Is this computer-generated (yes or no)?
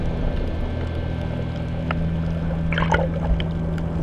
no